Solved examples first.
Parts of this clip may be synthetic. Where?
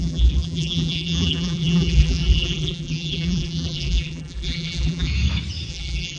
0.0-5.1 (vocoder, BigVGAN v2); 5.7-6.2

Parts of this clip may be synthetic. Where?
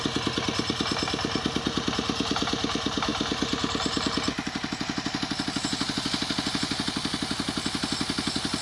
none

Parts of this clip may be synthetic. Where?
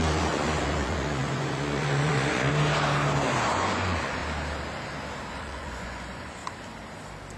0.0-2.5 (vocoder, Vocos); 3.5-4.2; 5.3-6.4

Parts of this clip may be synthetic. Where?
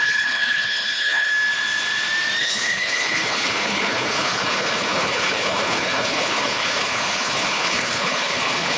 0.0-1.3 (codec, HILCodec); 2.4-8.8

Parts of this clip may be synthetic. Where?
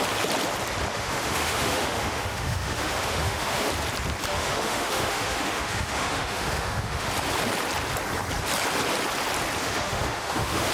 0.9-3.7 (autoencoder, DAC-VAE); 4.3-7.1; 9.6-10.7